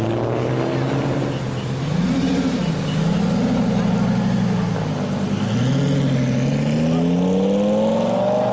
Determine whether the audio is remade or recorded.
recorded